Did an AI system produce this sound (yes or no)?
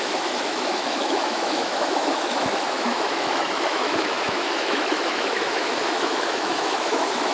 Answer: yes